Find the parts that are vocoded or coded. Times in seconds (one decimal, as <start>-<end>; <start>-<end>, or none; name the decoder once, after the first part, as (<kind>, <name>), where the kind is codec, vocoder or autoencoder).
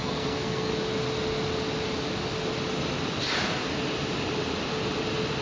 0.0-0.7 (codec, SNAC)